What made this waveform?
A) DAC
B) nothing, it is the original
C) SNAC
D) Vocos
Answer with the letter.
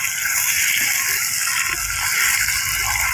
B